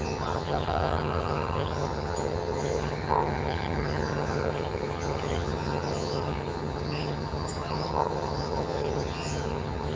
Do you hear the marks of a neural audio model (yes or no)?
yes